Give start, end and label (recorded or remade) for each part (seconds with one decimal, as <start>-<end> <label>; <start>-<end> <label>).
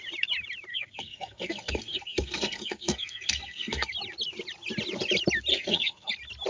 0.0-0.7 recorded; 0.7-3.9 remade; 3.9-5.5 recorded; 5.5-6.1 remade; 6.1-6.5 recorded